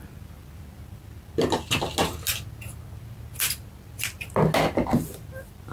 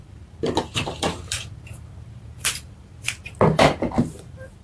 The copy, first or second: second